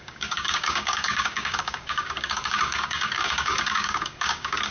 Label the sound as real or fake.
fake